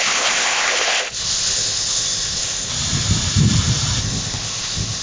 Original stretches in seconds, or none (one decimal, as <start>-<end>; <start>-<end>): 2.7-4.0